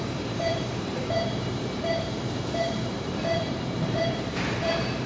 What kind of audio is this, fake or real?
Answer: fake